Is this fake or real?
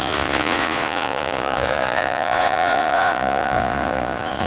fake